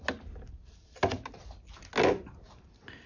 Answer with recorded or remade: recorded